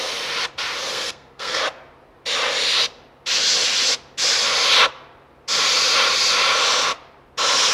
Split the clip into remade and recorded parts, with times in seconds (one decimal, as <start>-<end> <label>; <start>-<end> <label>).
0.0-0.9 recorded; 0.9-1.6 remade; 1.6-7.7 recorded